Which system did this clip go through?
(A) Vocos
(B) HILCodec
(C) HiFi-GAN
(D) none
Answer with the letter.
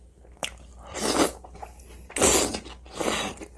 D